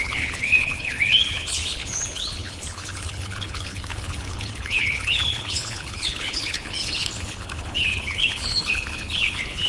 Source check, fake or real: fake